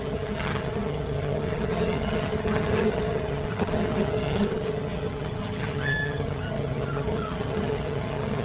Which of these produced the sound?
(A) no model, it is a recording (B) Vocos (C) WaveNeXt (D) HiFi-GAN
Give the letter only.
D